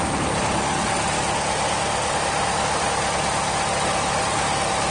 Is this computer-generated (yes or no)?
no